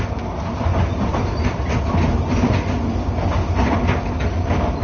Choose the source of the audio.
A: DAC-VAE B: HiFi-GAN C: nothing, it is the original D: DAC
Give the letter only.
C